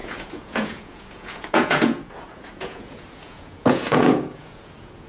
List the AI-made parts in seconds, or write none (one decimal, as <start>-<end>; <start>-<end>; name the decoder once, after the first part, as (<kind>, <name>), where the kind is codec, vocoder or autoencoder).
0.0-5.1 (vocoder, Vocos)

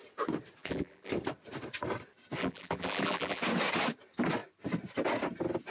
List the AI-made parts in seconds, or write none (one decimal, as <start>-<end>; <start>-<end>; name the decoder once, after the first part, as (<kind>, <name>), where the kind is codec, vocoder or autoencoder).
0.6-1.1 (vocoder, BigVGAN v2); 2.4-3.4

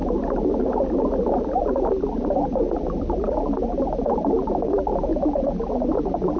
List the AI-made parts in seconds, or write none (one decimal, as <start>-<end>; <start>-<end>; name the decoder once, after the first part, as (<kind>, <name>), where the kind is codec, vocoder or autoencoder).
none

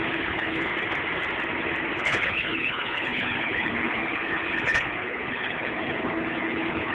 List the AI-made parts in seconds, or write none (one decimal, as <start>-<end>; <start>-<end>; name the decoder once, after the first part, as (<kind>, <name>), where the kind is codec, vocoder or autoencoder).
0.0-0.7 (codec, HILCodec); 2.0-6.9

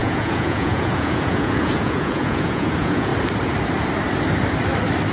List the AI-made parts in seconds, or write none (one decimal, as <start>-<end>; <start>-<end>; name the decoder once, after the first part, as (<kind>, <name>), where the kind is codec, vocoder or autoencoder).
0.0-3.1 (vocoder, Vocos)

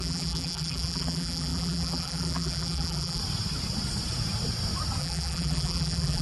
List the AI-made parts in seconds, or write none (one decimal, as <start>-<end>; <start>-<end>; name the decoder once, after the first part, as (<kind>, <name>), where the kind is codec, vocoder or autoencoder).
0.0-3.2 (vocoder, BigVGAN v2); 5.0-6.2